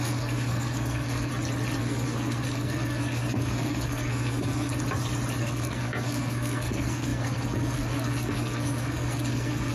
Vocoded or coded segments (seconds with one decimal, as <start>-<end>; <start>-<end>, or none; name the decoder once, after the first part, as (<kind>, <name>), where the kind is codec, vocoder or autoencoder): 0.0-1.3 (codec, SNAC); 1.8-4.7; 5.4-9.7